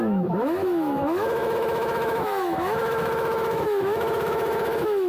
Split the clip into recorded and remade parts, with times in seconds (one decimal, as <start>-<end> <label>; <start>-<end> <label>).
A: 0.0-5.1 remade